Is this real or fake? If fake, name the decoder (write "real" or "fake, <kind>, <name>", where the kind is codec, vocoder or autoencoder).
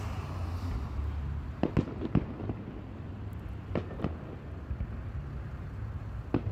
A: real